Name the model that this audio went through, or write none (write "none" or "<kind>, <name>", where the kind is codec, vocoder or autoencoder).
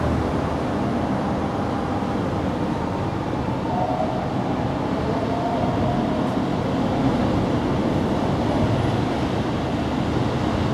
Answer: none